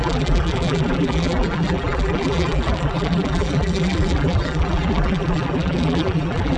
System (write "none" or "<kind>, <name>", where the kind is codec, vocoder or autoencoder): vocoder, BigVGAN v2